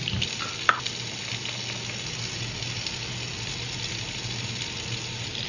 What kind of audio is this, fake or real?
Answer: real